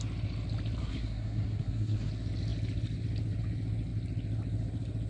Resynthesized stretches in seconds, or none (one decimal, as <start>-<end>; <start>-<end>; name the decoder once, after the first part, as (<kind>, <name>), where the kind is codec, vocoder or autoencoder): 0.8-2.1 (codec, SNAC)